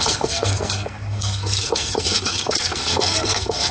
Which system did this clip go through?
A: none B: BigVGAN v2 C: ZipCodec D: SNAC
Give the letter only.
D